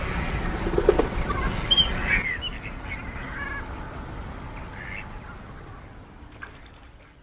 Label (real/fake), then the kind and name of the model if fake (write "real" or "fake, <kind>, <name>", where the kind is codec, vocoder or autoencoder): real